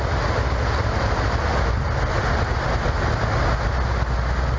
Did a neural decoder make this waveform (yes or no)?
no